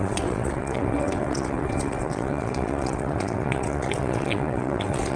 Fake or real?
fake